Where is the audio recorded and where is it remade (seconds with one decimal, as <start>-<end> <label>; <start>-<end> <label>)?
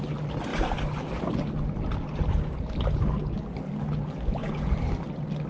0.0-5.5 recorded